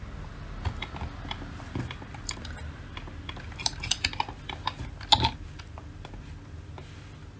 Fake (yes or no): no